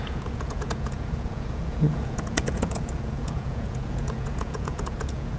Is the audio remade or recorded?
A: remade